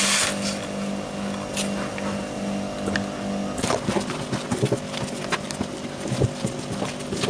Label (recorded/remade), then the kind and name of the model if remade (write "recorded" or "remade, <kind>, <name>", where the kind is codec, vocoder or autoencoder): recorded